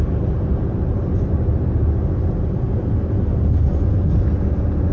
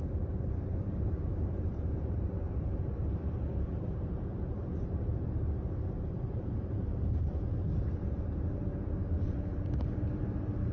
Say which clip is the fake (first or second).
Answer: second